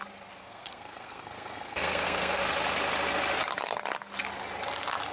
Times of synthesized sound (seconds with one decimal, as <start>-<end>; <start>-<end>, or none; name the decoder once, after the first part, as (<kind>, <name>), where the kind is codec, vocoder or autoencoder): 0.4-2.4 (codec, SNAC)